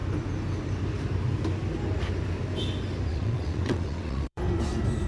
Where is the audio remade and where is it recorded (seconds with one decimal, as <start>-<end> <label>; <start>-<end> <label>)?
0.0-3.1 recorded; 3.1-4.4 remade; 4.4-5.1 recorded